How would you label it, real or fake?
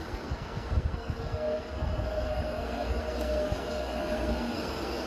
fake